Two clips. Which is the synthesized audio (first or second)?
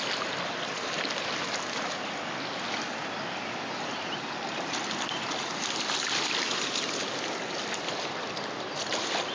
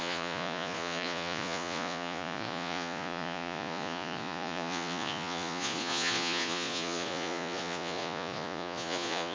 second